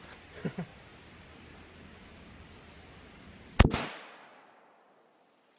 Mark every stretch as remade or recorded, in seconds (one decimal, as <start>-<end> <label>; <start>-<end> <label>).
0.0-5.6 recorded

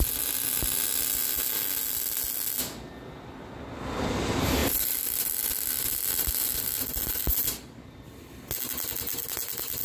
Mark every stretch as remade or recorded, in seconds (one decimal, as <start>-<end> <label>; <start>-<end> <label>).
0.0-9.8 recorded

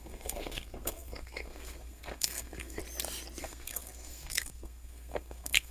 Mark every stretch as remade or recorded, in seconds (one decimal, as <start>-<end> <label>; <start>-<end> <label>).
0.0-2.8 remade; 2.8-3.4 recorded; 3.4-5.7 remade

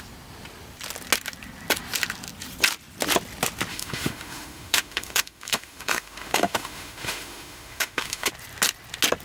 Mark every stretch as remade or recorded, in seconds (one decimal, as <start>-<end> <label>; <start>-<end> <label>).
0.0-3.7 recorded; 3.7-8.3 remade; 8.3-9.2 recorded

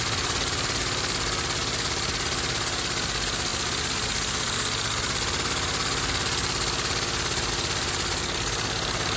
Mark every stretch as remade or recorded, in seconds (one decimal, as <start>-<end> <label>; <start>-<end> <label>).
0.0-9.2 recorded

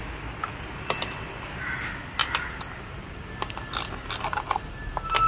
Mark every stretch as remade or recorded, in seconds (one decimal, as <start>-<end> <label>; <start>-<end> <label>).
0.0-5.3 recorded

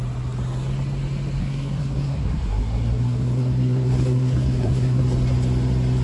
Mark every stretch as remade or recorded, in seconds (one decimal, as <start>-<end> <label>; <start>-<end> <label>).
0.0-1.4 recorded; 1.4-5.0 remade; 5.0-6.0 recorded